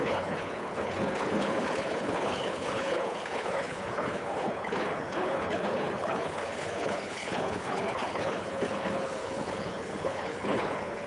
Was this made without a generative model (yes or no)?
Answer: no